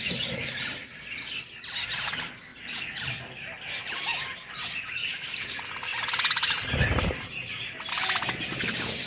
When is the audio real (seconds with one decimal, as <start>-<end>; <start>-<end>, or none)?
0.0-9.1